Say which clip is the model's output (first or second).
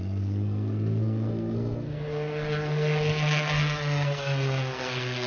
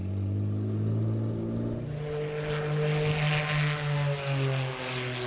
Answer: first